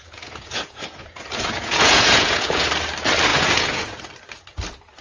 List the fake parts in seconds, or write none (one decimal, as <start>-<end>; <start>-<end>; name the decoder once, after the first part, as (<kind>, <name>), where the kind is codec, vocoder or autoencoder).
0.0-2.7 (vocoder, Vocos); 3.3-4.0